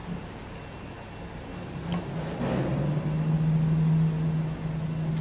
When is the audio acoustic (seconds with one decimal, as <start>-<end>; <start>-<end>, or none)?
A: 0.0-5.2